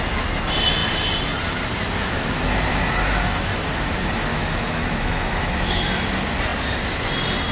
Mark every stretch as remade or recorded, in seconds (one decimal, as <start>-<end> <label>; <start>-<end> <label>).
0.0-4.3 recorded; 4.3-5.9 remade; 5.9-7.5 recorded

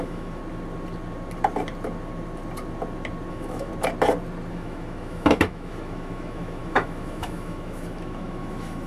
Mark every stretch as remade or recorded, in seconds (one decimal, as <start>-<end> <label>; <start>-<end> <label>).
0.0-0.4 remade; 0.4-3.3 recorded; 3.3-3.7 remade; 3.7-4.5 recorded; 4.5-8.9 remade

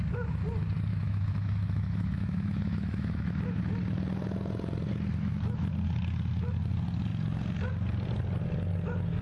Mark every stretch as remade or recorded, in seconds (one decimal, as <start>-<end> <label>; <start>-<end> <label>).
0.0-0.9 recorded; 0.9-3.6 remade; 3.6-5.1 recorded; 5.1-5.7 remade; 5.7-9.2 recorded

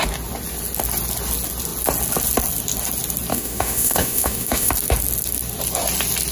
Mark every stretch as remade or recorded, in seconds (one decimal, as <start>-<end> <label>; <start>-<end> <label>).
0.0-3.3 recorded; 3.3-4.7 remade; 4.7-6.3 recorded

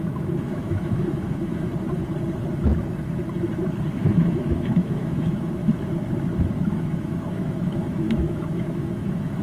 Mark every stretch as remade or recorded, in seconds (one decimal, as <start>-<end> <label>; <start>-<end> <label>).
0.0-1.7 remade; 1.7-4.0 recorded; 4.0-5.6 remade; 5.6-6.7 recorded; 6.7-9.4 remade

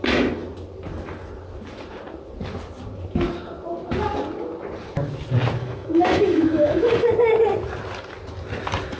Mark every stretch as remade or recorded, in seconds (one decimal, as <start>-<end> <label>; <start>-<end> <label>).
0.0-5.6 recorded; 5.6-7.1 remade; 7.1-9.0 recorded

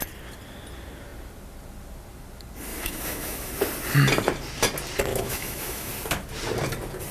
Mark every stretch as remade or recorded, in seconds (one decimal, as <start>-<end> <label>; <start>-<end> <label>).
0.0-2.7 recorded; 2.7-3.5 remade; 3.5-5.1 recorded; 5.1-5.9 remade; 5.9-7.1 recorded

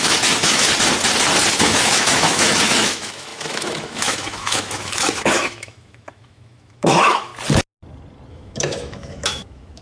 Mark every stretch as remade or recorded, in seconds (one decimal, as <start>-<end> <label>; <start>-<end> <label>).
0.0-0.7 remade; 0.7-1.6 recorded; 1.6-7.3 remade; 7.3-8.3 recorded; 8.3-9.8 remade